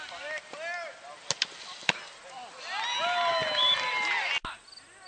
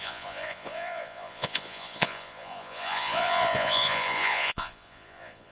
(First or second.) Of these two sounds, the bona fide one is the first